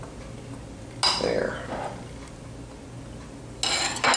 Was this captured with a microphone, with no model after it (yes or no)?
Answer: yes